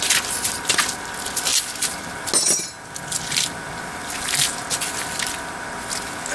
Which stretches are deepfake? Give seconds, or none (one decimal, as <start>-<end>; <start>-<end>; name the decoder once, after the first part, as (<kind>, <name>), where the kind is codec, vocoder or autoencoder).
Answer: none

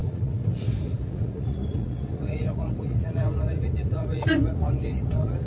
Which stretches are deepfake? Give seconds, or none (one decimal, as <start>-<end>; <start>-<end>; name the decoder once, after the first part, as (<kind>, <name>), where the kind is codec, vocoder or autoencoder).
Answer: 0.0-5.5 (vocoder, Vocos)

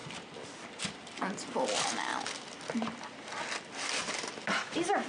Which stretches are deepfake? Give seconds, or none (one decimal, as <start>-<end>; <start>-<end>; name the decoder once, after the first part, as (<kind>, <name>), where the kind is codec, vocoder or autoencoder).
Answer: none

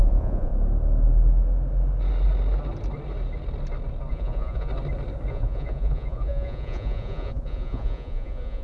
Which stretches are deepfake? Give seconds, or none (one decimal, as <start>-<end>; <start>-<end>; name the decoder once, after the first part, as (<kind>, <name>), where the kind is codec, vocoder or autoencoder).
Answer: 0.0-0.5 (vocoder, Vocos); 4.1-4.7; 5.3-8.6

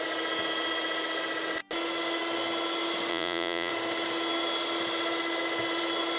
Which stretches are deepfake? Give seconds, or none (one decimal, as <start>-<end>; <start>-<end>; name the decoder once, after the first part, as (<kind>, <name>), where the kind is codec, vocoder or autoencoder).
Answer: 3.1-3.7 (vocoder, Vocos)

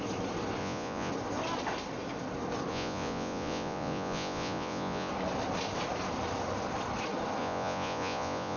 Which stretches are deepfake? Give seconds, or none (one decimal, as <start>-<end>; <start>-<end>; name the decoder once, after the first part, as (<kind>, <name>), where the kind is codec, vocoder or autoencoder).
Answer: 0.6-1.1 (vocoder, Vocos); 2.7-5.1; 7.4-8.6